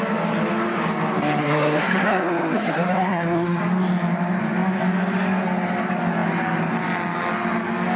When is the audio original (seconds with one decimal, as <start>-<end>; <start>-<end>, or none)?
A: 0.0-1.4; 3.6-8.0